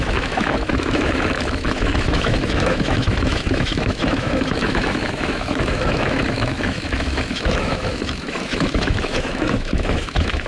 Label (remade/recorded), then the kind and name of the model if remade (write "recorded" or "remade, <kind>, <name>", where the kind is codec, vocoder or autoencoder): remade, autoencoder, DAC-VAE